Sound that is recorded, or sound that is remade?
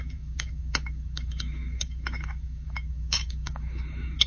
remade